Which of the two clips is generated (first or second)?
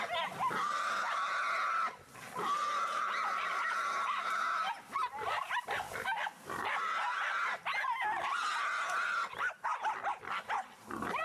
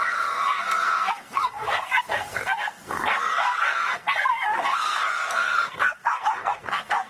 second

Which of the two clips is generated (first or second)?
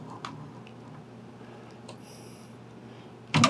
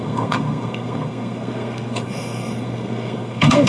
second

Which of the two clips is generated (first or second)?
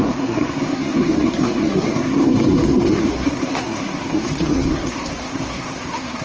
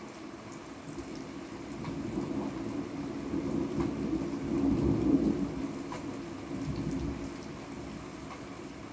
first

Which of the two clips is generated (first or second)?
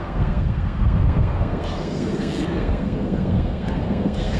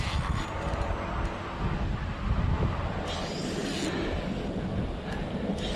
first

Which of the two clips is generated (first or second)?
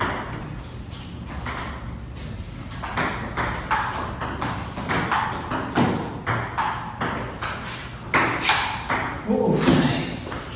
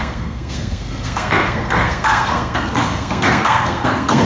second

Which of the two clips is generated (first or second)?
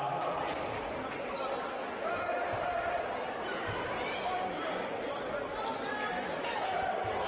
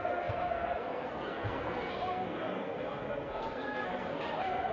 second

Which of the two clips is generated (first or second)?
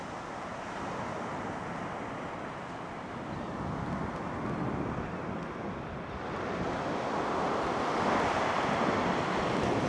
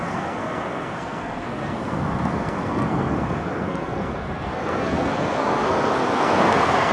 second